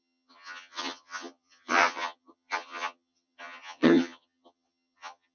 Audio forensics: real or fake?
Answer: fake